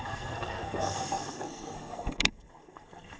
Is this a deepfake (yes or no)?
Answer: yes